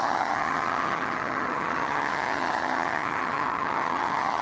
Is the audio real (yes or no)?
no